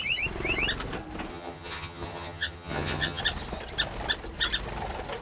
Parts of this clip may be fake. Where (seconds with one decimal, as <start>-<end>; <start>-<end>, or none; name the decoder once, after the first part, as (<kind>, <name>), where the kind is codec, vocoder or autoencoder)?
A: 1.3-3.2 (vocoder, HiFi-GAN)